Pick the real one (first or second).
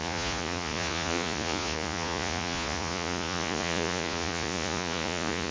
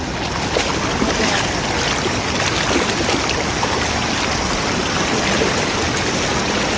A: second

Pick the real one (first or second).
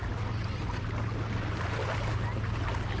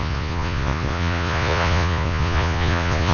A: first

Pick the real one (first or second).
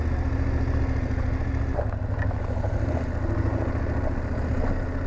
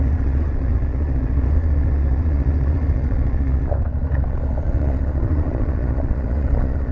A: first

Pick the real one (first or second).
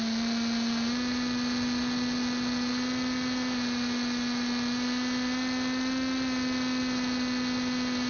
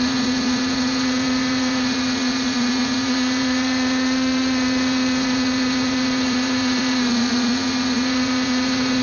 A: first